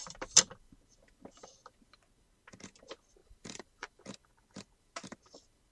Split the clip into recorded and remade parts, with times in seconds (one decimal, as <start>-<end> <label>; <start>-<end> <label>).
0.0-3.2 recorded; 3.2-4.0 remade; 4.0-5.7 recorded

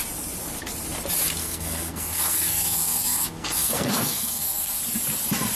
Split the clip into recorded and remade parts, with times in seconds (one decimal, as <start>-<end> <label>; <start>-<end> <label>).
0.0-1.4 recorded; 1.4-4.8 remade; 4.8-5.6 recorded

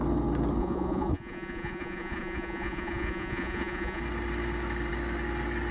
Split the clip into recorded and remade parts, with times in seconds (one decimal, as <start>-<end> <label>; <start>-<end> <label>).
0.0-0.6 recorded; 0.6-4.0 remade; 4.0-5.7 recorded

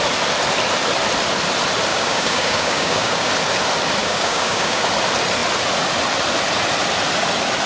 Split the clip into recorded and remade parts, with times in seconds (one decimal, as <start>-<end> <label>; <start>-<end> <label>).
0.0-1.9 recorded; 1.9-3.3 remade; 3.3-4.0 recorded; 4.0-4.8 remade; 4.8-7.7 recorded

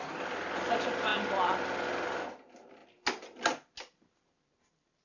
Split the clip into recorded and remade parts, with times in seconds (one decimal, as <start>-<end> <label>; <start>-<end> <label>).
0.0-5.0 recorded

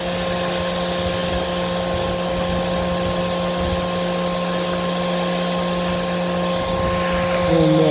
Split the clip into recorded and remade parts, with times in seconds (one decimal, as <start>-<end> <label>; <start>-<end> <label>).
0.0-7.9 recorded

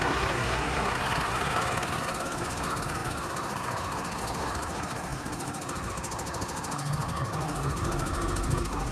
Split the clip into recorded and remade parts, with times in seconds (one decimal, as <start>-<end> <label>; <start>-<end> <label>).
0.0-8.9 remade